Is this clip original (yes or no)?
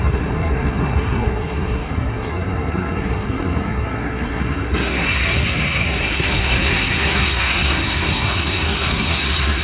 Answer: no